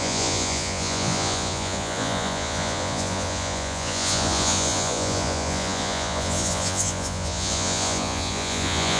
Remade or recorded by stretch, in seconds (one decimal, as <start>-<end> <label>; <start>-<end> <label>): 0.0-9.0 remade